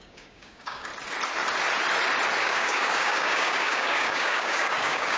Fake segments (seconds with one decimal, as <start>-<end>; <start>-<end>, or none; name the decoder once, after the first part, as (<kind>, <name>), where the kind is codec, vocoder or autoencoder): 0.0-0.9 (codec, DAC); 2.4-5.2